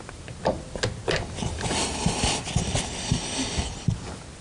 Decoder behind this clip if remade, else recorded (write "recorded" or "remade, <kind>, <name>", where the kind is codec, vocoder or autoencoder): recorded